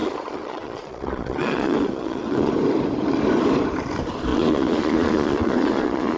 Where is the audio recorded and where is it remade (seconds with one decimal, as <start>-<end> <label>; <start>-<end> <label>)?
0.0-2.5 remade; 2.5-4.3 recorded; 4.3-6.2 remade